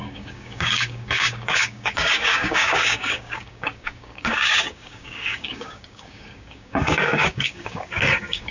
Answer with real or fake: fake